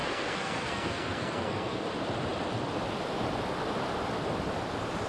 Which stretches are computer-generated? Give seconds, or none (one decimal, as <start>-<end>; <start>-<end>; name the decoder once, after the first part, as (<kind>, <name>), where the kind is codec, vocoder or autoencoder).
0.0-1.8 (codec, SNAC)